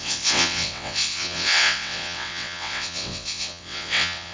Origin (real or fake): fake